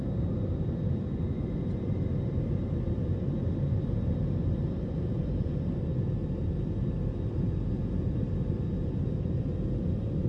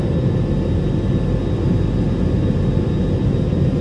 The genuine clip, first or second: second